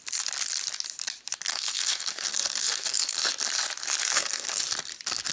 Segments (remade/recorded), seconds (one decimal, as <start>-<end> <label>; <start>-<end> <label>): 0.0-1.5 recorded; 1.5-3.3 remade; 3.3-4.0 recorded; 4.0-4.6 remade; 4.6-5.3 recorded